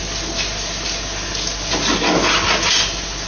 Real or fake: real